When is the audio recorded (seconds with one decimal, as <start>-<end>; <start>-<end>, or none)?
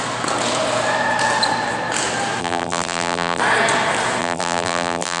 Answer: 0.0-2.4; 3.4-4.2